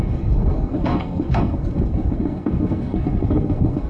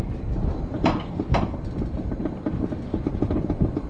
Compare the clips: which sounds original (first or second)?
second